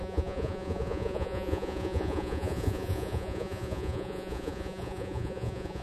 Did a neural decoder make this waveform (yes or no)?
yes